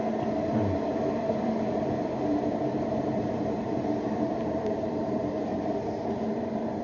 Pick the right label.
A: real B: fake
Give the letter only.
B